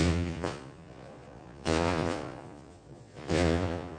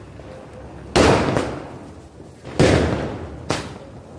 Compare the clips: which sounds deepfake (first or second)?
first